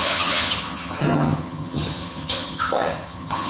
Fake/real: fake